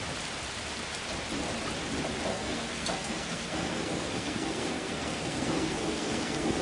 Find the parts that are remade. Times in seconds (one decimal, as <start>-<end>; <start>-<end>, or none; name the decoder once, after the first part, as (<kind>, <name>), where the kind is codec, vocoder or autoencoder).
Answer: 2.3-6.6 (codec, SNAC)